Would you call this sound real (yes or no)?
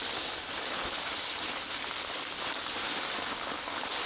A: yes